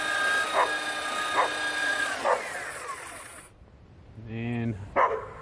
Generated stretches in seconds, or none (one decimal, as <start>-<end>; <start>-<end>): 1.8-3.6